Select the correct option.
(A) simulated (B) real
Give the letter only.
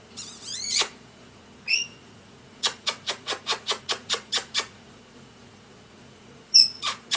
A